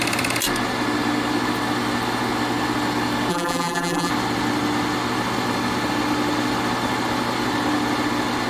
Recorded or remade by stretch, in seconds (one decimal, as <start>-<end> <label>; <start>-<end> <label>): 0.0-3.3 recorded; 3.3-4.1 remade; 4.1-8.5 recorded